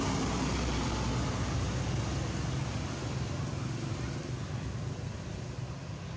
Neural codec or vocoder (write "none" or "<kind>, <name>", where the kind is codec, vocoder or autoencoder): none